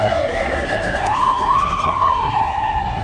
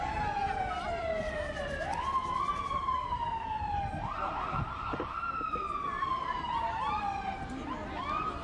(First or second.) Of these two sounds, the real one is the second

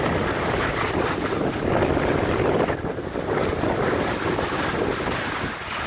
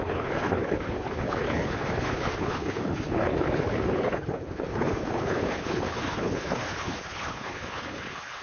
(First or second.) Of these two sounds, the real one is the first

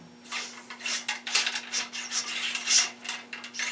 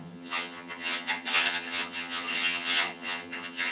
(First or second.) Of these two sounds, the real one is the first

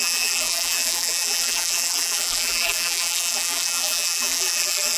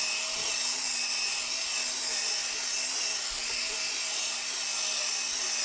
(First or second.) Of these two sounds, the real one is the second